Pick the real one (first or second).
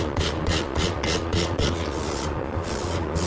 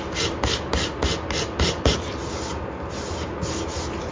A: second